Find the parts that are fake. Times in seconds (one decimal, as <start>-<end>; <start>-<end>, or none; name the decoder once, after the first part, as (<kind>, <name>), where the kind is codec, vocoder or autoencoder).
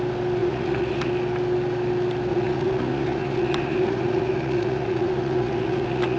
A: 0.4-1.1 (vocoder, Vocos); 2.3-6.2